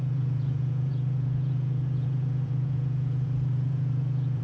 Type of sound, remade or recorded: remade